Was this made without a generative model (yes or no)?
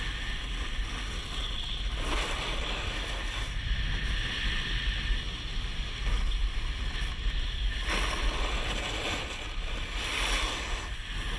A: yes